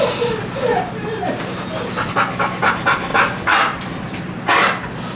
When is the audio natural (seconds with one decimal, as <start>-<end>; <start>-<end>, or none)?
0.0-0.7; 1.7-3.1; 4.4-5.2